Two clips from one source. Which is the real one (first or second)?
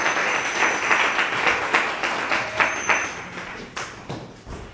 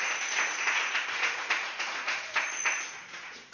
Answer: first